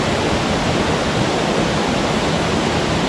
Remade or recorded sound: recorded